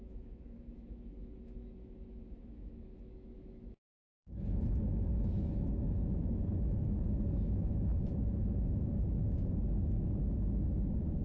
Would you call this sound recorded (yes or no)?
no